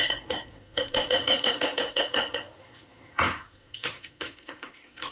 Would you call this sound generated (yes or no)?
yes